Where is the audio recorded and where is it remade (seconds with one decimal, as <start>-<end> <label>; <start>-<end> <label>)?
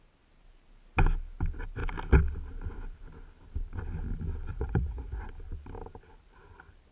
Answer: 0.0-4.5 recorded; 4.5-5.2 remade; 5.2-6.9 recorded